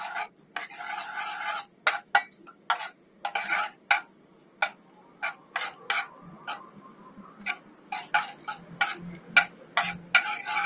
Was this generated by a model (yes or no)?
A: no